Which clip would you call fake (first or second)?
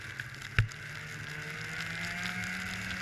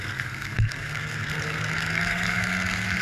second